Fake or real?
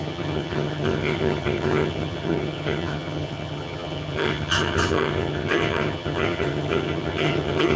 fake